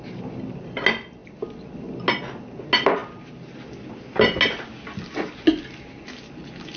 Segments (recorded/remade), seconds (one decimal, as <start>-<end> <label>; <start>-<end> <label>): 0.0-6.8 recorded